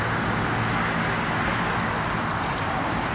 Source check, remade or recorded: recorded